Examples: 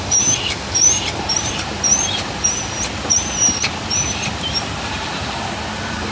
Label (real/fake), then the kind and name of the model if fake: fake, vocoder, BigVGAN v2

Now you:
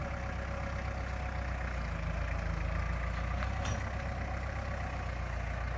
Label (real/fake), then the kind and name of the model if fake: real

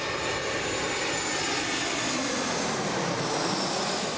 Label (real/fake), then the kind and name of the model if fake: real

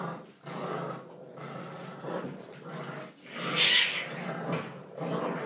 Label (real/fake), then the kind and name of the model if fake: real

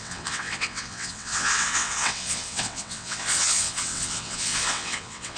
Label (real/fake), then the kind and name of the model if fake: fake, vocoder, WaveNeXt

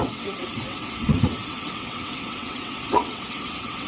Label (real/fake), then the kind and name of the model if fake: fake, vocoder, WaveNeXt